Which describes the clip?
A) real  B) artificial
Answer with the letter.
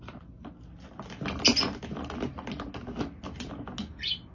A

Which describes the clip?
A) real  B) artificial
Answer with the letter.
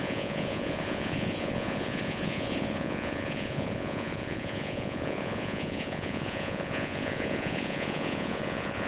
B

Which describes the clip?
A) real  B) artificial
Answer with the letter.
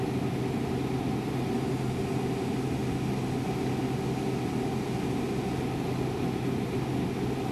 A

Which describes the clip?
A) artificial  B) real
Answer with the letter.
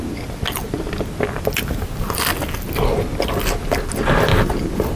B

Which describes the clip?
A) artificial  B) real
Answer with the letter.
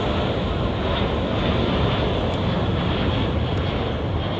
B